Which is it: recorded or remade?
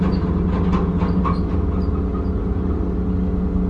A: recorded